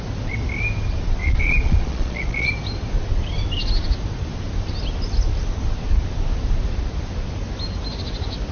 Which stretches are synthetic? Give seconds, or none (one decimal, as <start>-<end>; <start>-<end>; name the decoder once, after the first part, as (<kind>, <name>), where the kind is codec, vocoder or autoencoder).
1.2-2.5 (vocoder, Vocos)